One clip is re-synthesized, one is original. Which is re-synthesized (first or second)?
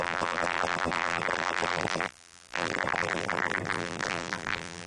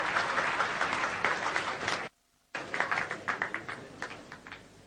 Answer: first